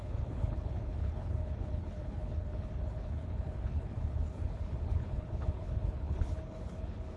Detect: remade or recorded remade